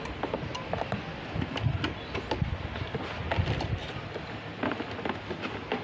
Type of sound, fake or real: real